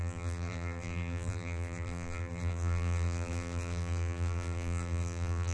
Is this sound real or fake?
fake